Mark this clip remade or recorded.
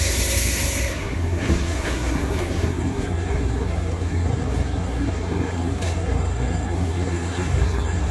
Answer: remade